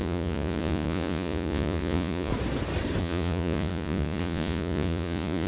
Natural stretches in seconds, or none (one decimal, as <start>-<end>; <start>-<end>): 2.3-3.0

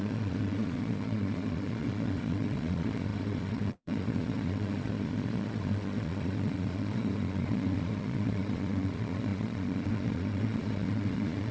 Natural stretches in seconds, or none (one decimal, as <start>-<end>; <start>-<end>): none

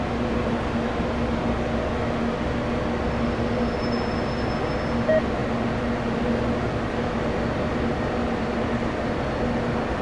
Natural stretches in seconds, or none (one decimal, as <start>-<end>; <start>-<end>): 0.0-10.0

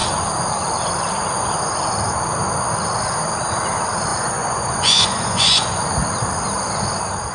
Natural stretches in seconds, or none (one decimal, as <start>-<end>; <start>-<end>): 0.0-4.1; 5.8-7.3

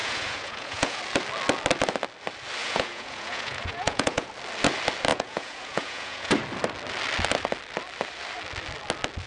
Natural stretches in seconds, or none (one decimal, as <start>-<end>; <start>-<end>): 1.0-2.6; 4.3-5.1; 6.3-9.3

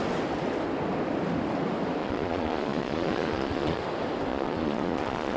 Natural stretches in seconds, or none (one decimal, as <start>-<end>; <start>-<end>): 0.0-2.0; 3.8-4.3

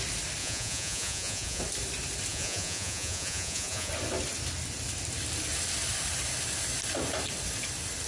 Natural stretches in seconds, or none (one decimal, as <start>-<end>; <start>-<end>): 0.0-0.4; 1.6-2.3; 3.9-8.1